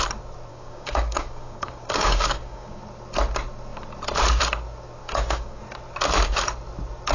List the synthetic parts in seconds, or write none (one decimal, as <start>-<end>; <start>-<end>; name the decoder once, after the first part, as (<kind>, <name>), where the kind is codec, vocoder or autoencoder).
0.5-2.8 (codec, DAC); 5.0-5.6